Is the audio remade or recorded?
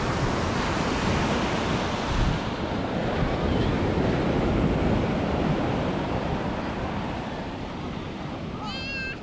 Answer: recorded